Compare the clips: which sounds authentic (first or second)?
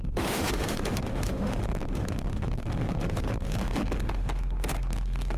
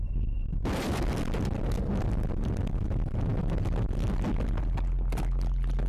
second